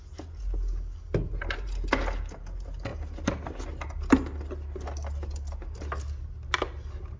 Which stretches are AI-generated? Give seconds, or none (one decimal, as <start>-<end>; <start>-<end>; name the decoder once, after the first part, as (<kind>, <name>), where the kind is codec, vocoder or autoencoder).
none